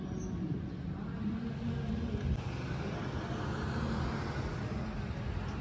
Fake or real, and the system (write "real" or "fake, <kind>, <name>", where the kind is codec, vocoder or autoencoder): real